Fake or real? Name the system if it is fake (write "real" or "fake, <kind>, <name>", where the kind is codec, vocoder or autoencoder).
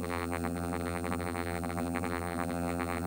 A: fake, vocoder, BigVGAN v2